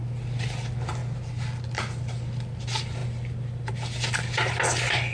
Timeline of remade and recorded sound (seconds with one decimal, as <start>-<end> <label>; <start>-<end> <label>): 0.0-1.0 remade; 1.0-1.8 recorded; 1.8-5.1 remade